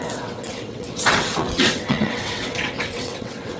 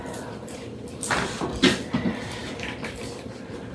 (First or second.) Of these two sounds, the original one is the second